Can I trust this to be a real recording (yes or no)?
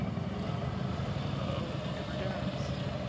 yes